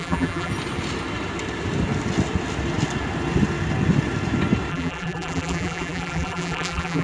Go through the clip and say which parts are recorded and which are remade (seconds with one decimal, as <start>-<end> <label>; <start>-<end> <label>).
0.0-0.5 remade; 0.5-4.7 recorded; 4.7-7.0 remade